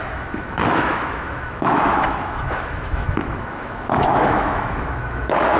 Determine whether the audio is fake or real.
fake